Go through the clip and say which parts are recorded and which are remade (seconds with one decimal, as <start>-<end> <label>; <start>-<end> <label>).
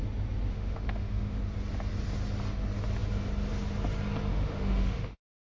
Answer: 0.0-0.5 recorded; 0.5-1.4 remade; 1.4-4.3 recorded; 4.3-5.5 remade